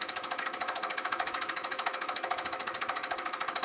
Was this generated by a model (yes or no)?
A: yes